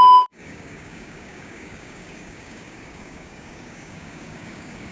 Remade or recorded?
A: remade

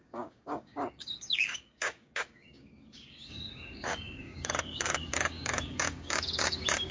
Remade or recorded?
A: remade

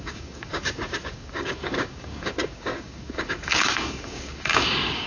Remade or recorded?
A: remade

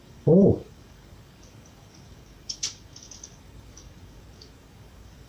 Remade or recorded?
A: remade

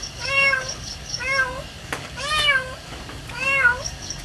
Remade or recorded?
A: remade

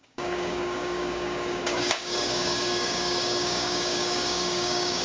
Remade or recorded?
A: remade